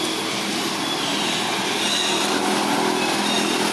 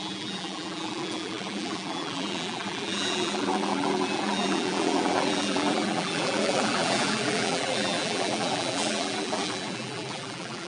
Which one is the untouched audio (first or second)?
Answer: first